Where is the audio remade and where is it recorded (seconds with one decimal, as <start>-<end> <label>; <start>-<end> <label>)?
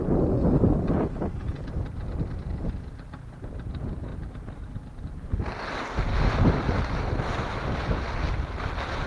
0.0-9.1 recorded